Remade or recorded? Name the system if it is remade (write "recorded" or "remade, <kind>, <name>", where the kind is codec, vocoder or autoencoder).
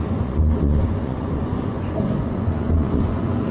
remade, vocoder, Vocos